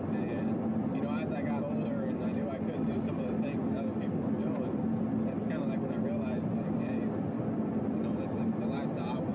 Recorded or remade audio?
recorded